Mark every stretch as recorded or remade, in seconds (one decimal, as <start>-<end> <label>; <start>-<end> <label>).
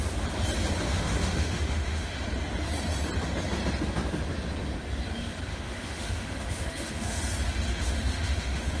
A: 0.0-0.9 recorded; 0.9-2.1 remade; 2.1-5.5 recorded; 5.5-7.2 remade; 7.2-7.7 recorded; 7.7-8.8 remade